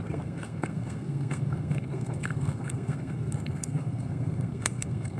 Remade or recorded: remade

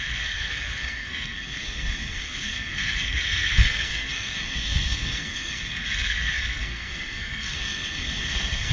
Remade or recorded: remade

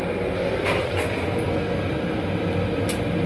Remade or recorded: recorded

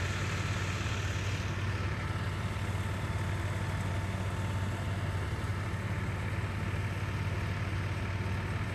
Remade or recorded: recorded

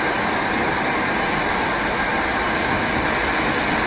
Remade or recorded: recorded